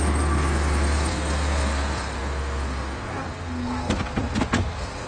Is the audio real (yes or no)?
yes